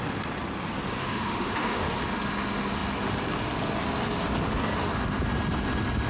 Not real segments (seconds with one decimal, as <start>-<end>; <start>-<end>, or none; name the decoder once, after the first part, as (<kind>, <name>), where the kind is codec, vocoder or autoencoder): 1.0-1.9 (autoencoder, DAC-VAE)